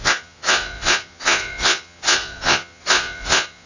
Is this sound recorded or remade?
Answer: remade